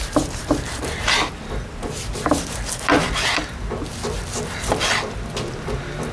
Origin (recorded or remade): recorded